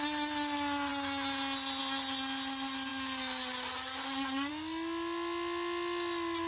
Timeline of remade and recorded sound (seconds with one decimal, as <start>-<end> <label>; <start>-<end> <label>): 0.0-6.5 recorded